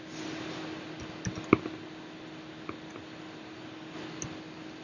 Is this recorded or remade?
recorded